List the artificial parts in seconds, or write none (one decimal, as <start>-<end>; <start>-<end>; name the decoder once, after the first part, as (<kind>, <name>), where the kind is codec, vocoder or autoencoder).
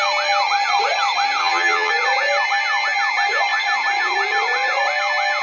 1.4-1.9 (vocoder, HiFi-GAN)